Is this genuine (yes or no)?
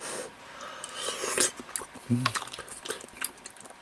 yes